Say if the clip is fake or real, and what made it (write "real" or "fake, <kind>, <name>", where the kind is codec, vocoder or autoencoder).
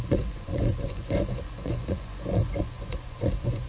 fake, vocoder, Vocos